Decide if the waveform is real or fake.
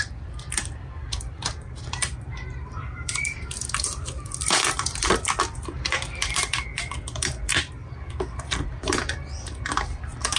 fake